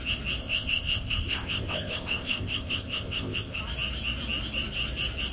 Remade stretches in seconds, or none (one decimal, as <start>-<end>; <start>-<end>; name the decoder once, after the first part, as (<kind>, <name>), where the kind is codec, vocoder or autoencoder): 0.4-3.6 (codec, ZipCodec)